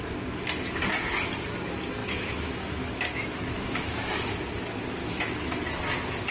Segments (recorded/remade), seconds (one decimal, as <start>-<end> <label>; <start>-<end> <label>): 0.0-2.0 recorded; 2.0-4.5 remade; 4.5-5.0 recorded; 5.0-5.6 remade; 5.6-6.3 recorded